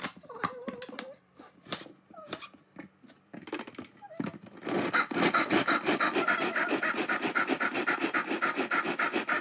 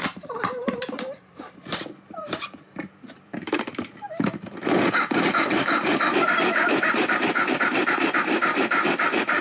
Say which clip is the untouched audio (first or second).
first